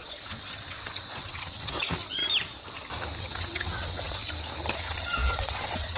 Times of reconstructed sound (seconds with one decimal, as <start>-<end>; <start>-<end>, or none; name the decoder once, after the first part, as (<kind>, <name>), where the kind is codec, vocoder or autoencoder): 0.0-2.2 (vocoder, WaveNeXt); 3.2-4.2; 4.8-6.0